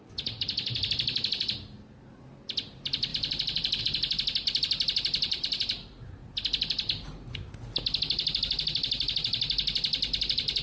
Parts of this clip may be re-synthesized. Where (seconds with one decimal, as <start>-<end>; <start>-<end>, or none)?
none